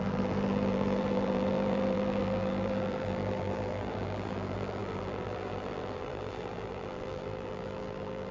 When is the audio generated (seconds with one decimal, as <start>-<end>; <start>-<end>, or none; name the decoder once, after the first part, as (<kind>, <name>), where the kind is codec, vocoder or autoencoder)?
0.0-8.3 (vocoder, BigVGAN v2)